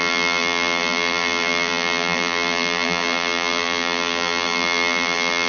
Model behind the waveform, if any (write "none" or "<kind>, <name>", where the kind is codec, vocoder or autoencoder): vocoder, BigVGAN v2